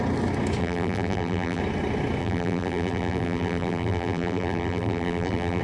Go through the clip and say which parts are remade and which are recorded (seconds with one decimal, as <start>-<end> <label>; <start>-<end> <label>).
0.0-0.6 recorded; 0.6-1.6 remade; 1.6-2.2 recorded; 2.2-5.6 remade